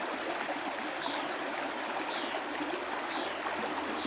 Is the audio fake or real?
real